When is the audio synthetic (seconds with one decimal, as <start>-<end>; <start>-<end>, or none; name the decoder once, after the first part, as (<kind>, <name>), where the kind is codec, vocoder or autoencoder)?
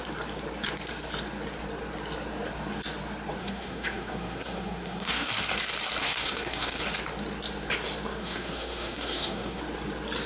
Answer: 3.4-5.3 (codec, SNAC); 6.0-6.8; 8.2-9.6